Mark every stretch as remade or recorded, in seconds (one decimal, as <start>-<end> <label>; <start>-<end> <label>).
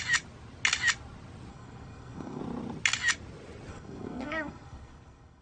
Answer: 0.0-1.5 recorded; 1.5-2.4 remade; 2.4-3.7 recorded; 3.7-5.4 remade